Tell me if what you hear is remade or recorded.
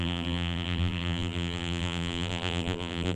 remade